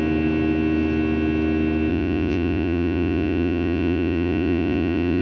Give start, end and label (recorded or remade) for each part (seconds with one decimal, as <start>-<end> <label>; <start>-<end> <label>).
0.0-1.9 recorded; 1.9-5.2 remade